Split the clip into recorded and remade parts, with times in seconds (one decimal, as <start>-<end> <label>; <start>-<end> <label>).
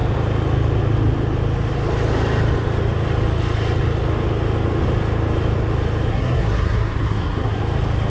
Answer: 0.0-6.1 recorded; 6.1-7.6 remade; 7.6-8.1 recorded